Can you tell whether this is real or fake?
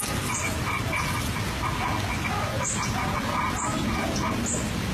real